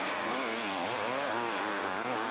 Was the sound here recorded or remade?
recorded